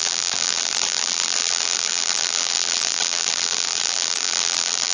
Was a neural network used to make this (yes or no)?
yes